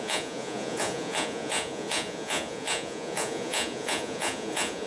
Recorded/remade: remade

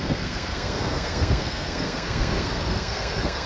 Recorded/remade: remade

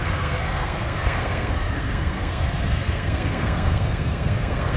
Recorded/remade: remade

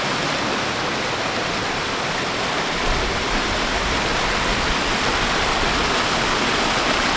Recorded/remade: recorded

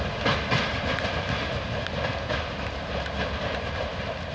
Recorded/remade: recorded